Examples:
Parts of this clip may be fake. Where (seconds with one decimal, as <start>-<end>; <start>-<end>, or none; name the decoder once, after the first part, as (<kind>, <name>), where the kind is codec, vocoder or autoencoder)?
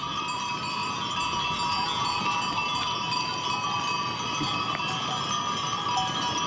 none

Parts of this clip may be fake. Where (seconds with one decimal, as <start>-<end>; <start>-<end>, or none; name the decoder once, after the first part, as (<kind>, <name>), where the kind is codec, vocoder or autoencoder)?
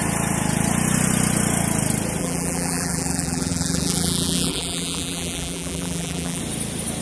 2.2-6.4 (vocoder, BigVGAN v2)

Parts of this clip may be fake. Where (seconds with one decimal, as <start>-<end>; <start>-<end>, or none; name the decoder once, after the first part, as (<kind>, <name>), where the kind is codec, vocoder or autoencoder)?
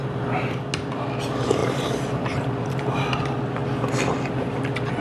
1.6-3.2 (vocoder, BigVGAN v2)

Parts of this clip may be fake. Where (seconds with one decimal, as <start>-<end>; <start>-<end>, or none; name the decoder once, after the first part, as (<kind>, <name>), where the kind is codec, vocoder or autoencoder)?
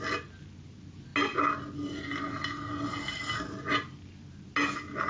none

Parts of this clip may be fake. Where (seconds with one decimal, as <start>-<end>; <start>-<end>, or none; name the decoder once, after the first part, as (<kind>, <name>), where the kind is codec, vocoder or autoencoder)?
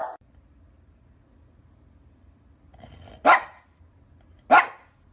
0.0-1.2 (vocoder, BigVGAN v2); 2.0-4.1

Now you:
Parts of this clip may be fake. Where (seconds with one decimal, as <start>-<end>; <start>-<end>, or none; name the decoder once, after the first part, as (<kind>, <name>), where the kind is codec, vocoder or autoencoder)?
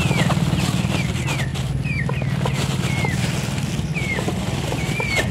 1.5-2.9 (vocoder, BigVGAN v2); 3.9-5.3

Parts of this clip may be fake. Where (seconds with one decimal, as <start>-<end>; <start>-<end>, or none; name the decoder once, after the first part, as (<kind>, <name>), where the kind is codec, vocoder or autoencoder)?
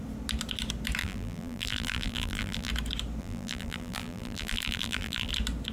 1.0-2.7 (vocoder, BigVGAN v2); 3.2-5.3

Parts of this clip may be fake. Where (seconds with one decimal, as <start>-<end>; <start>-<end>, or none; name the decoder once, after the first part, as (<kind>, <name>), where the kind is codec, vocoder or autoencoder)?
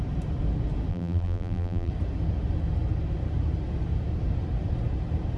0.9-1.9 (vocoder, BigVGAN v2)